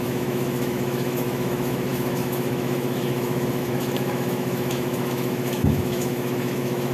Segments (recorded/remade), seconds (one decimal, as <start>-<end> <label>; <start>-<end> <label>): 0.0-6.9 remade